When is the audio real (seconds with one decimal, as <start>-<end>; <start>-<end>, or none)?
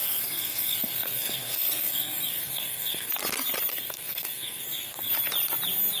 3.1-3.7; 5.1-6.0